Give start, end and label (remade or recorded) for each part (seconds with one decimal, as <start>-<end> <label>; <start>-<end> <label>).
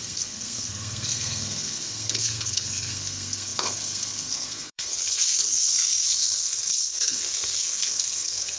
0.0-8.6 remade